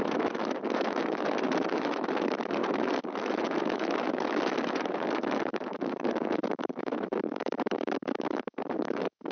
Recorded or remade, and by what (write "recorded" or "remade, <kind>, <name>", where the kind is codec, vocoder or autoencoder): remade, autoencoder, DAC-VAE